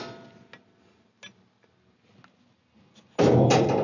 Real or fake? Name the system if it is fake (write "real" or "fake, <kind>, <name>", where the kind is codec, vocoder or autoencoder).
real